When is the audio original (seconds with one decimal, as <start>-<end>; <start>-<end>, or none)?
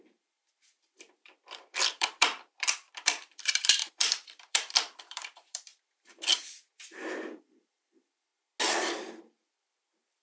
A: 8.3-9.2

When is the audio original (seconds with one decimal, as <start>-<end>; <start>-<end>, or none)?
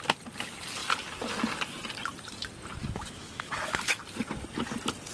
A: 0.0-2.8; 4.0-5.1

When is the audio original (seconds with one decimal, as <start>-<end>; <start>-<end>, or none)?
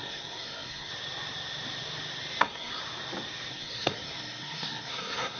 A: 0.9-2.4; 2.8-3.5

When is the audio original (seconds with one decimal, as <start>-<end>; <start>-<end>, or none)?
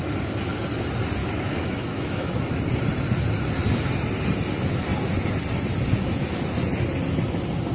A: 0.0-1.2; 2.6-7.7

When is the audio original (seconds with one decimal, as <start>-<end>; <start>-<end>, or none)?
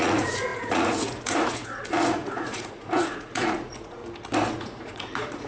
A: 4.0-4.5